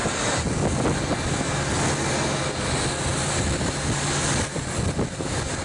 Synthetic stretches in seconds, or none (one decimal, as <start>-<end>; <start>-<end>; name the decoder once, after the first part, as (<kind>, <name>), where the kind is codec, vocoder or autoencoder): none